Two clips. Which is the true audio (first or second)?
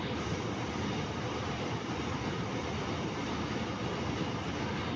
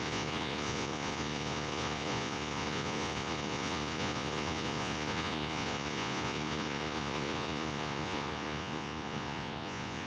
first